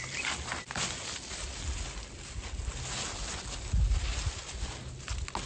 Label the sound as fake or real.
real